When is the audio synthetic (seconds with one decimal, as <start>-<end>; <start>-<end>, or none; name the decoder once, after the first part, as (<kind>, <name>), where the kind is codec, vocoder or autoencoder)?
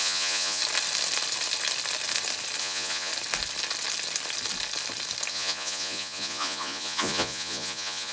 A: 0.0-0.6 (vocoder, Vocos); 2.6-3.1; 5.3-8.1